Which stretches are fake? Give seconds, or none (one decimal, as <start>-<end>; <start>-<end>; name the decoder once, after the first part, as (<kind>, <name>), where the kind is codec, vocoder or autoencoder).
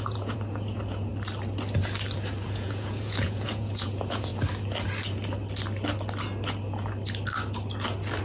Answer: 0.0-1.1 (vocoder, Vocos); 2.4-4.3